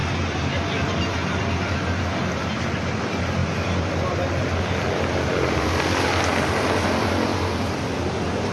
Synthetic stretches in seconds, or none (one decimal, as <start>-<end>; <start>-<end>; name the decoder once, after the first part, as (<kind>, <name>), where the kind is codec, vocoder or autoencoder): none